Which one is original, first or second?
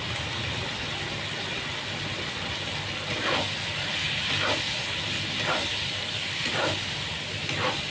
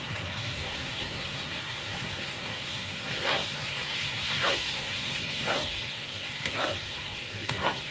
first